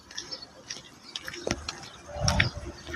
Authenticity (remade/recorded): recorded